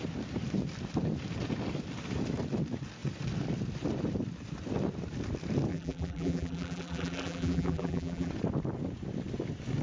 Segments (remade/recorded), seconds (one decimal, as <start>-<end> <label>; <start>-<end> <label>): 0.0-5.7 recorded; 5.7-8.3 remade; 8.3-9.8 recorded